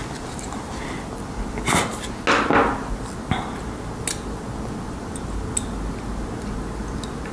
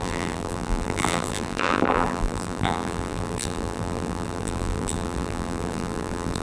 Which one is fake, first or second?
second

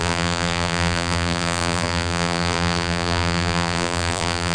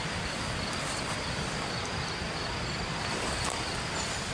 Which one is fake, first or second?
first